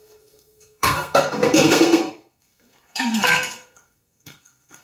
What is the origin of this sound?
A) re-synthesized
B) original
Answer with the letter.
A